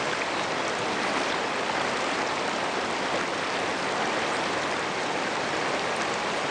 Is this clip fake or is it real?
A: real